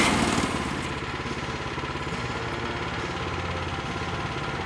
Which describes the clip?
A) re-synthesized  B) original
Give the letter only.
B